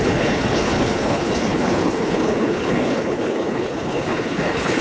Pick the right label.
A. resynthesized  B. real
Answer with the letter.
A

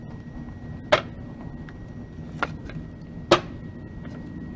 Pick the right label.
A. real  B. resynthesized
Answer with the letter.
A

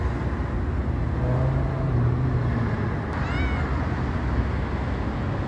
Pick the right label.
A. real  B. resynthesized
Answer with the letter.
A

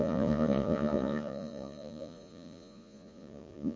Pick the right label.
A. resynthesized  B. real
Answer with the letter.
A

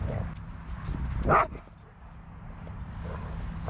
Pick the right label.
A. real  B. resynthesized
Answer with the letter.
A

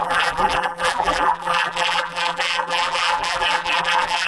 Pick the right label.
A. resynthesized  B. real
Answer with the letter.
A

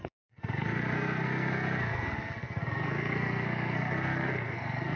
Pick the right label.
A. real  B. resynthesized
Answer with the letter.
B